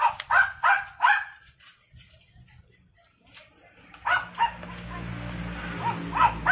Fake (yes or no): no